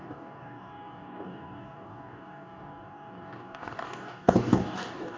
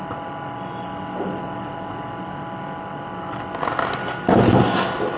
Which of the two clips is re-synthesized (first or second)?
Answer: first